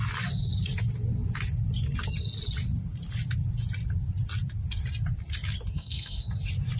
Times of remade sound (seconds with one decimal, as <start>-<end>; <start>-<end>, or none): 5.7-6.3